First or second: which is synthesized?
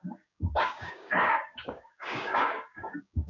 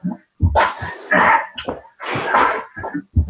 first